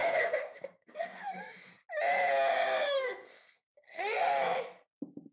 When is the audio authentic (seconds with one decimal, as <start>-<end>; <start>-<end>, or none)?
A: 1.7-2.5; 4.6-5.3

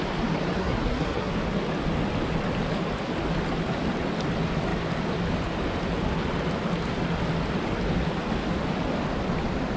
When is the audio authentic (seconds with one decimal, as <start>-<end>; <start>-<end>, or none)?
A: 0.0-0.6; 1.3-9.8

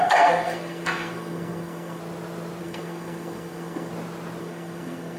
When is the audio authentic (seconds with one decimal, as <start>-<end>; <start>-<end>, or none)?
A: 2.0-2.6; 3.9-4.4